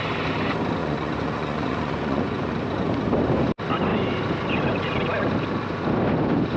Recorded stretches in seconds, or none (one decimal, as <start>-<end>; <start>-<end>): 0.0-0.8; 2.5-6.6